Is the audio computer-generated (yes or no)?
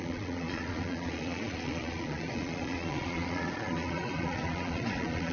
yes